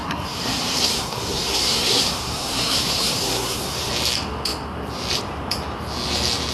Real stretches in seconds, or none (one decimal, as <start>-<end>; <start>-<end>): 3.9-6.5